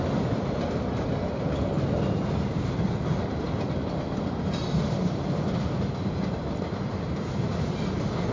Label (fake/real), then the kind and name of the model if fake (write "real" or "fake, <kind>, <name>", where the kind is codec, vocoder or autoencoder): real